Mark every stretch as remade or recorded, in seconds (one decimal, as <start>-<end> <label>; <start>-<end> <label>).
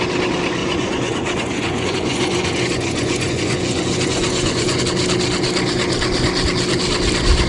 0.0-0.6 recorded; 0.6-4.8 remade; 4.8-7.5 recorded